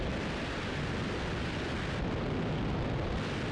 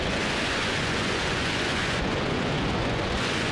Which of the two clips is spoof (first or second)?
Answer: second